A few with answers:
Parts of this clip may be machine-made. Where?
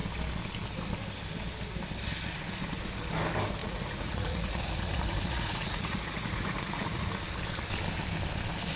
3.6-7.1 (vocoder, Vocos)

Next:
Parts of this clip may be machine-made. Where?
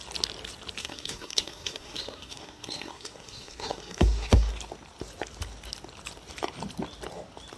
0.8-4.5 (codec, SNAC)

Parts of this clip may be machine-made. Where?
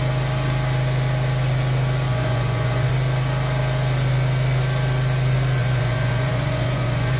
2.1-2.9 (vocoder, Vocos); 5.6-7.2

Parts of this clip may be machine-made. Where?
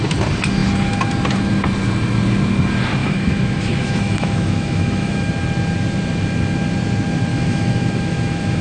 3.0-5.3 (autoencoder, DAC-VAE); 7.3-8.6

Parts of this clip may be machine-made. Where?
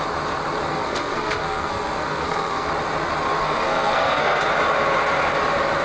0.7-2.7 (codec, SNAC); 3.4-4.4